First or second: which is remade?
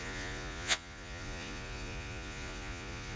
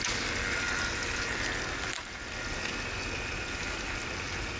first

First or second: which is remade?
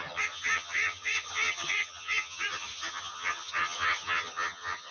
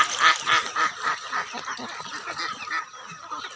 first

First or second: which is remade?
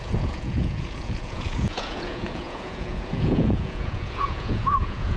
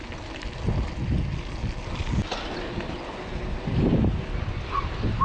first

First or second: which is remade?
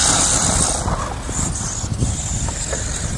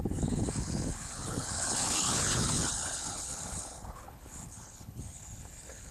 second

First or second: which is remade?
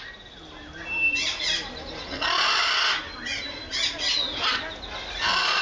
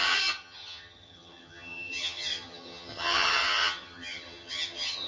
second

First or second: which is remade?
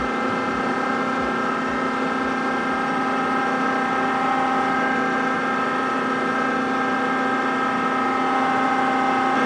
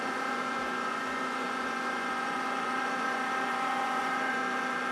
second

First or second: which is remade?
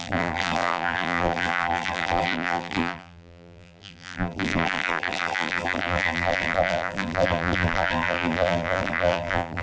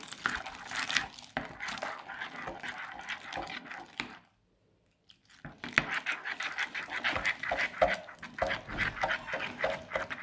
first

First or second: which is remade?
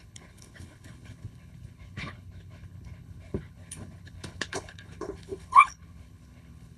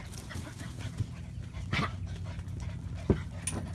first